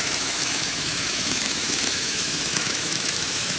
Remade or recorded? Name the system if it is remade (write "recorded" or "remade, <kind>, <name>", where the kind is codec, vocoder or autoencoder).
remade, autoencoder, DAC-VAE